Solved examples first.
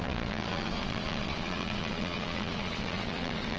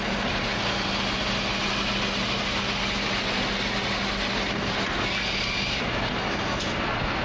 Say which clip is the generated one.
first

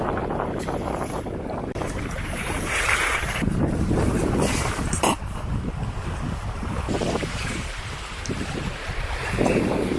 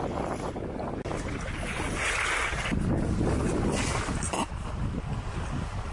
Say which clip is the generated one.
first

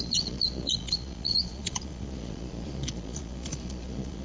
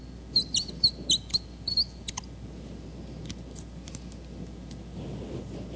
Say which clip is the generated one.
first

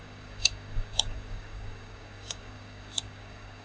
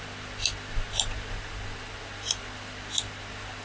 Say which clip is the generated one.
first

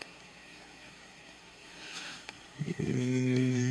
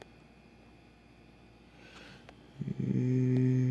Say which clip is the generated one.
first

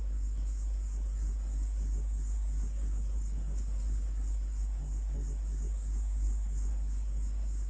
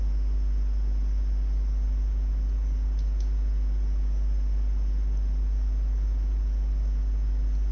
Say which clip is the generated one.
first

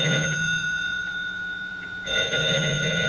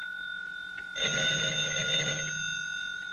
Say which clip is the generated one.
first